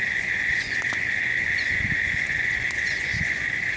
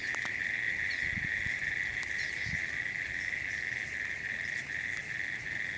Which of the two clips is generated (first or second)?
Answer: first